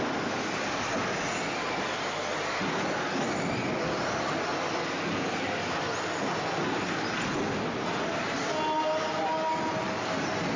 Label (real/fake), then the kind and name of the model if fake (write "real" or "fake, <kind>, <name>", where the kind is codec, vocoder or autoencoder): real